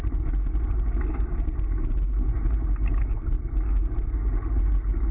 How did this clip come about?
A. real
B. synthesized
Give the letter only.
A